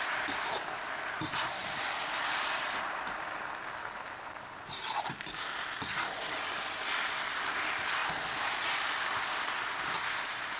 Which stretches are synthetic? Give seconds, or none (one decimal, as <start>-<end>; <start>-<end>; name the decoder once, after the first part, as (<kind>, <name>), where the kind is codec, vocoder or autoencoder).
none